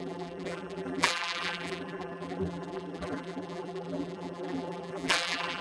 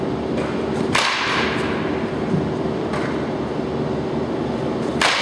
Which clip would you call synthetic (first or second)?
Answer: first